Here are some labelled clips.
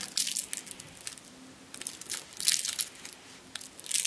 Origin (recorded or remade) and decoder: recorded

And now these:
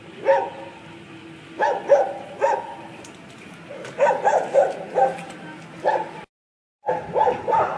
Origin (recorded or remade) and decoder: recorded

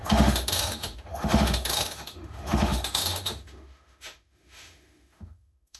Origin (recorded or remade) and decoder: remade, autoencoder, DAC-VAE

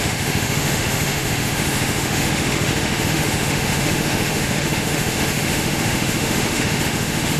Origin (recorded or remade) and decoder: remade, autoencoder, DAC-VAE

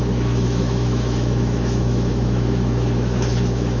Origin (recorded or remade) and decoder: remade, autoencoder, DAC-VAE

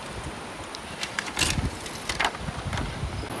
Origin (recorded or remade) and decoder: recorded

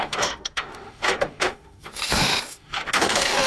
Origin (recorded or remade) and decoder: remade, autoencoder, DAC-VAE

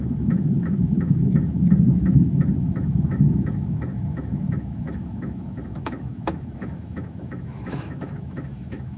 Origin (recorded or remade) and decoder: remade, autoencoder, DAC-VAE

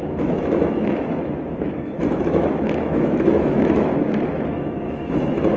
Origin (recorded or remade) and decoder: remade, autoencoder, DAC-VAE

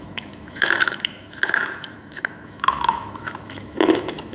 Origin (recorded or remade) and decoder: remade, autoencoder, DAC-VAE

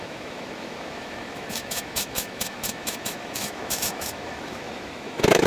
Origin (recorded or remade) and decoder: remade, autoencoder, DAC-VAE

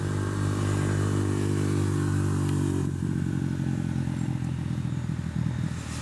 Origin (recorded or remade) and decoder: recorded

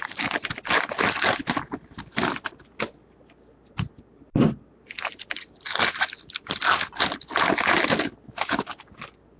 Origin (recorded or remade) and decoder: recorded